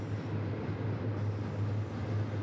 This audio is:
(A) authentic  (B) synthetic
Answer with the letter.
A